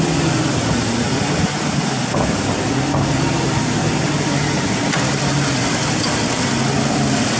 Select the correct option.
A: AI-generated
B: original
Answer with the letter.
B